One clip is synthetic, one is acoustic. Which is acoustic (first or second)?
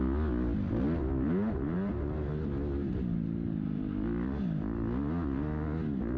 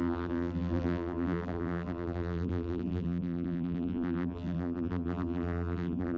first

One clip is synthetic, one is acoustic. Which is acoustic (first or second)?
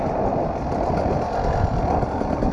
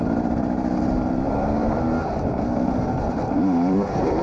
first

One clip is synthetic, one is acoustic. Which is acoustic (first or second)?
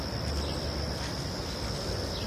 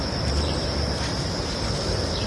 first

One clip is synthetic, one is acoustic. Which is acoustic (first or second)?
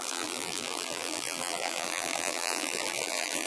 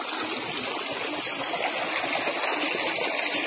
second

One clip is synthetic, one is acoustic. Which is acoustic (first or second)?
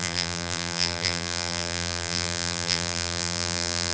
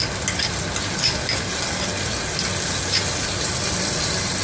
second